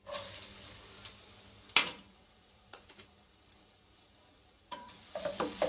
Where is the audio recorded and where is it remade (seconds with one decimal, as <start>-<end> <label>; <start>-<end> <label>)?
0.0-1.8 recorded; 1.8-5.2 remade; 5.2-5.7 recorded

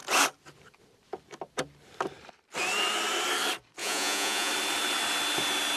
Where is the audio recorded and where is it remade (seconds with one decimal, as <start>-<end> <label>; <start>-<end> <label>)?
0.0-3.8 recorded; 3.8-4.5 remade; 4.5-5.8 recorded

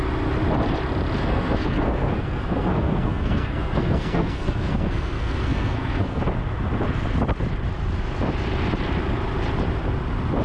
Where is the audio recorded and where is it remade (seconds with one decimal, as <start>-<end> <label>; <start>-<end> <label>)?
0.0-1.2 recorded; 1.2-6.2 remade; 6.2-10.4 recorded

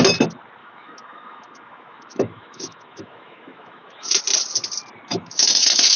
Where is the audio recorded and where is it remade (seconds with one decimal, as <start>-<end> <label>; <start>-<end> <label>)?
0.0-0.6 recorded; 0.6-4.2 remade; 4.2-5.1 recorded; 5.1-6.0 remade

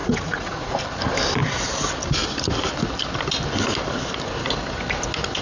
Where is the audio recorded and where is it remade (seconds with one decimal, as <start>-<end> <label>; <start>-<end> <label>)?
0.0-0.8 remade; 0.8-5.4 recorded

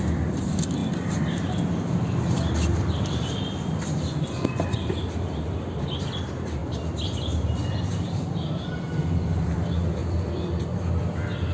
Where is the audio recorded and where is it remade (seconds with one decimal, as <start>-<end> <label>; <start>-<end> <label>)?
0.0-0.8 recorded; 0.8-3.0 remade; 3.0-6.6 recorded; 6.6-7.8 remade; 7.8-10.0 recorded; 10.0-10.6 remade; 10.6-11.5 recorded

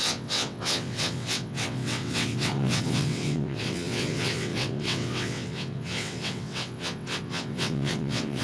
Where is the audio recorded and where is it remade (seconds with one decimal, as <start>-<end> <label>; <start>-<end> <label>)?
0.0-8.4 remade